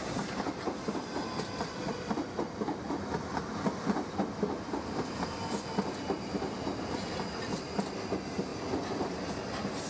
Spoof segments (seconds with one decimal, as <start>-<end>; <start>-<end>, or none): none